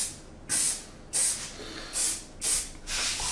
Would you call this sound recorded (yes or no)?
yes